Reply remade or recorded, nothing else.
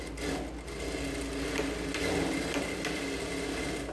recorded